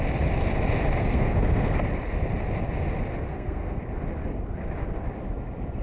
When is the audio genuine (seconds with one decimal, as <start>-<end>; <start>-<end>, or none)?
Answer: 0.0-1.0; 1.8-3.3; 3.8-5.8